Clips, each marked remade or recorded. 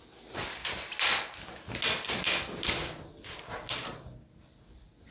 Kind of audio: recorded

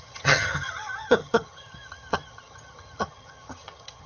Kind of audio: remade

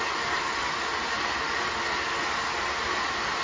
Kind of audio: recorded